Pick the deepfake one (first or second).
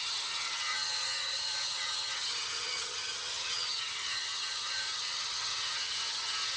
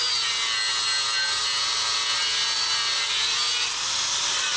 first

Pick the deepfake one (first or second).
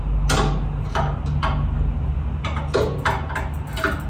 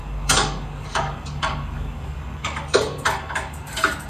second